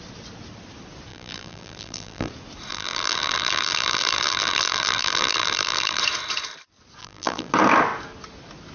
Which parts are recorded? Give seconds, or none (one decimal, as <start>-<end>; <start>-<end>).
0.0-1.1; 2.3-2.7; 6.0-7.0; 7.5-8.7